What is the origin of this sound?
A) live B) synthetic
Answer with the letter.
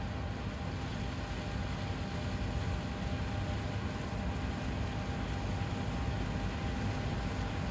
A